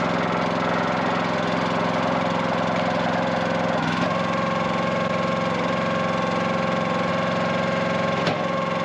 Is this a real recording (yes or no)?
yes